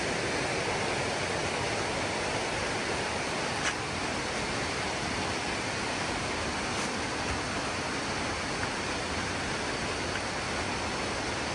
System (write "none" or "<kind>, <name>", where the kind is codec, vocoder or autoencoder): none